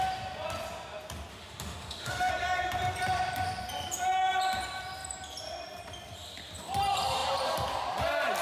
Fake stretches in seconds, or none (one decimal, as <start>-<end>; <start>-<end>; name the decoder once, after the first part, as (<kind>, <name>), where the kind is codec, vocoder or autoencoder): 1.3-2.3 (autoencoder, DAC-VAE)